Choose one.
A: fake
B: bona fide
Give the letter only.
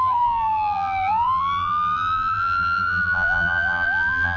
A